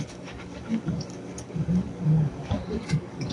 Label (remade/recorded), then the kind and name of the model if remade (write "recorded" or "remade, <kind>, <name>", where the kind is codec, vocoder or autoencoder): remade, codec, DAC